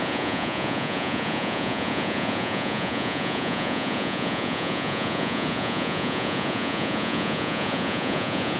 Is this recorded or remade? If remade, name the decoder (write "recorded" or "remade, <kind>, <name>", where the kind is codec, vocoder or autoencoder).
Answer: remade, vocoder, Vocos